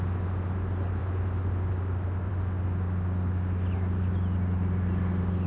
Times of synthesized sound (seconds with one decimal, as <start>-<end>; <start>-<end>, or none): none